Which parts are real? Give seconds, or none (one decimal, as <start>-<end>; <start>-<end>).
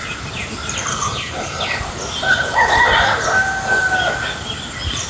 0.0-0.9; 1.9-2.3; 2.8-5.1